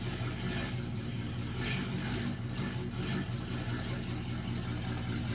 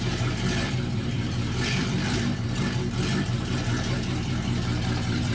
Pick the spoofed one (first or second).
second